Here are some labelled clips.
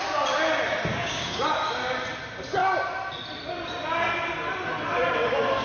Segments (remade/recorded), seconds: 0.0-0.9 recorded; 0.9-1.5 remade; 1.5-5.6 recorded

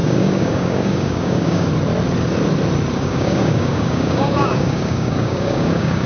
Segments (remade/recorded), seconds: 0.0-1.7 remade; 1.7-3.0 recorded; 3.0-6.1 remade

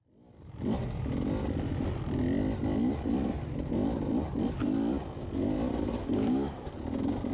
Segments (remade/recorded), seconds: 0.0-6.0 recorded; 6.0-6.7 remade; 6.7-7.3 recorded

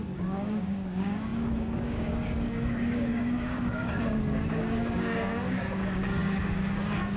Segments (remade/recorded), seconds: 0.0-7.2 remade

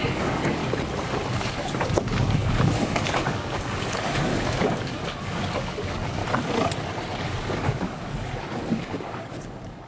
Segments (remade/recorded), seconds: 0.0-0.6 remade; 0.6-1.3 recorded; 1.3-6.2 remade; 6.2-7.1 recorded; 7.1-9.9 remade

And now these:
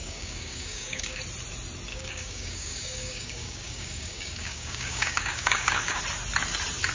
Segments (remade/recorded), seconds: 0.0-1.2 remade; 1.2-1.9 recorded; 1.9-6.0 remade; 6.0-6.9 recorded

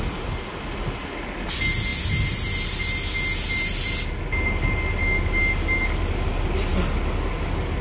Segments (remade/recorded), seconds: 0.0-5.0 recorded; 5.0-6.0 remade; 6.0-7.8 recorded